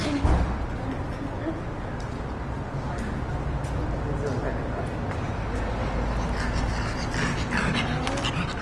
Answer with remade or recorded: recorded